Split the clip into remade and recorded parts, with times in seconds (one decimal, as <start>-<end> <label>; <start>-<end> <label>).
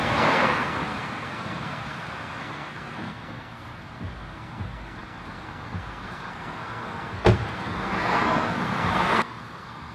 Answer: 0.0-9.9 remade